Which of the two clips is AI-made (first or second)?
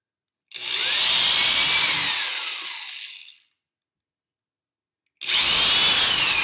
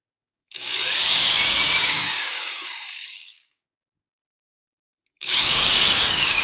second